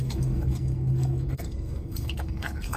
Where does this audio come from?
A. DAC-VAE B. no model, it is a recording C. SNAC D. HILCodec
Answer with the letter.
C